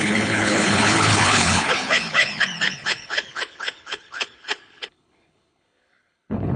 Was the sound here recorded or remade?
remade